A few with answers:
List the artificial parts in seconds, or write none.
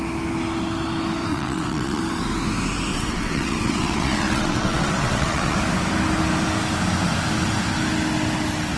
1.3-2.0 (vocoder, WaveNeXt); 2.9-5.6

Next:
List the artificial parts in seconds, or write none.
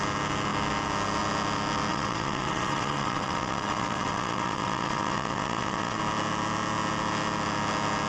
1.9-6.0 (vocoder, WaveNeXt)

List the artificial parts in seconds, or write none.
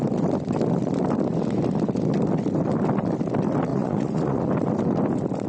3.7-4.5 (vocoder, Vocos)